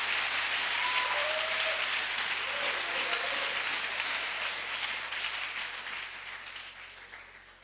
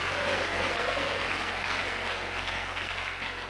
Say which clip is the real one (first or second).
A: first